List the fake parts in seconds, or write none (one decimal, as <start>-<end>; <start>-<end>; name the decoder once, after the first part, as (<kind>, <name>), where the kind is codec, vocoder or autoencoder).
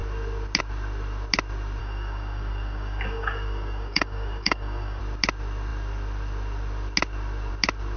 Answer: 1.8-5.0 (codec, DAC)